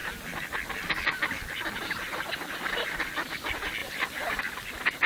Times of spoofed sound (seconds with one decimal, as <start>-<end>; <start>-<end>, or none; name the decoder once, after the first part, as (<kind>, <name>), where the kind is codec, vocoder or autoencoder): 3.8-4.4 (vocoder, BigVGAN v2)